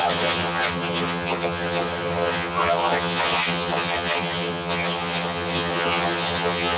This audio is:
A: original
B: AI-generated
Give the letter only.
B